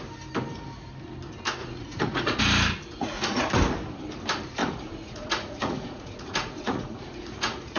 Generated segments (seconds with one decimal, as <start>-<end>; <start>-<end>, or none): 1.6-2.4; 2.9-3.4; 4.6-7.8